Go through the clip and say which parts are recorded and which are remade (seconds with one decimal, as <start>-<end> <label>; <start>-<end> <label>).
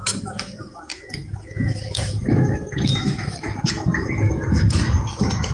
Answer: 0.0-5.5 remade